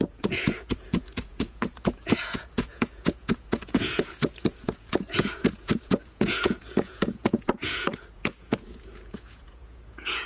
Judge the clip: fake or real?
fake